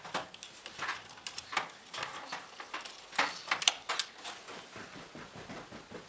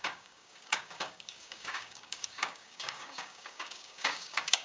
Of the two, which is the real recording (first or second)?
first